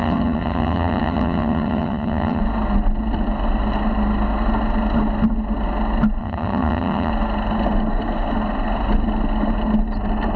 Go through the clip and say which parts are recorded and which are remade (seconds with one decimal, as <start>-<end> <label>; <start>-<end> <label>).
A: 0.0-2.4 remade; 2.4-6.2 recorded; 6.2-7.1 remade; 7.1-10.4 recorded